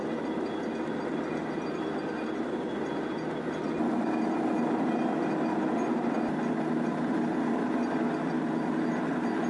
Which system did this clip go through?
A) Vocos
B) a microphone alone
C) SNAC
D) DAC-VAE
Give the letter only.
B